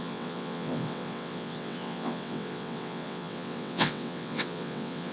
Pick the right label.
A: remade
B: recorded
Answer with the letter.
A